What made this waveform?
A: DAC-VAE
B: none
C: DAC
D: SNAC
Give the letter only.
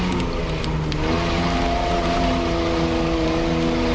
B